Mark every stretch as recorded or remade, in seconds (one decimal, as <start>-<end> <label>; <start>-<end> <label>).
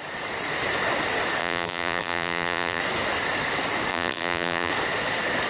0.0-1.4 recorded; 1.4-2.8 remade; 2.8-3.9 recorded; 3.9-4.7 remade; 4.7-5.5 recorded